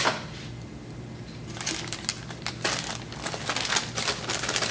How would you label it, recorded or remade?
recorded